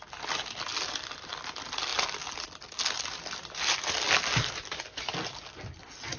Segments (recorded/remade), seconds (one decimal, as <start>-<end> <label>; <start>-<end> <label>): 0.0-6.2 recorded